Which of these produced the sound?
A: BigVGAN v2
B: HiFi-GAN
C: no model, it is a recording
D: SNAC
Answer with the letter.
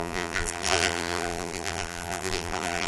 A